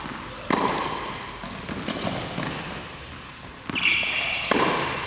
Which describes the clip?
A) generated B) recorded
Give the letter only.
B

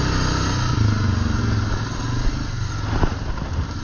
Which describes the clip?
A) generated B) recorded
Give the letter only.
B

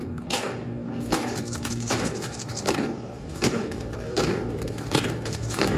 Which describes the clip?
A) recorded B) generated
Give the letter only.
B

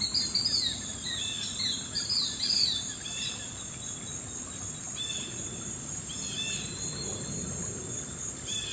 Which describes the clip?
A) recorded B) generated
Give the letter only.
A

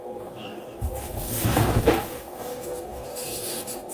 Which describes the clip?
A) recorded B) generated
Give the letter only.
B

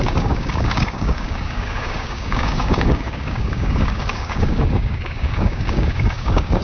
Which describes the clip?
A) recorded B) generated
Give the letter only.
B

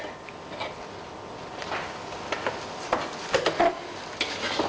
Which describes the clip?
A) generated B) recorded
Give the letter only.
B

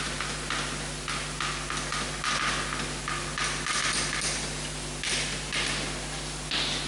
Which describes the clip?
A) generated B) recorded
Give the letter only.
B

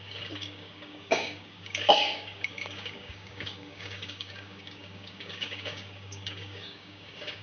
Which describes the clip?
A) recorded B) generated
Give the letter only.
B